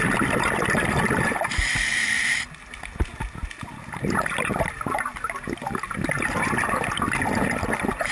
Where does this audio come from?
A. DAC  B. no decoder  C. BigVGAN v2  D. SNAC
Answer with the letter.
B